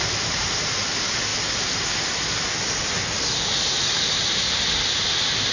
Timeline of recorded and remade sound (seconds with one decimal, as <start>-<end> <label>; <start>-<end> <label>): 0.0-5.5 recorded